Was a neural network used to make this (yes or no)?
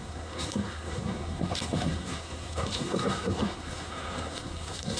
yes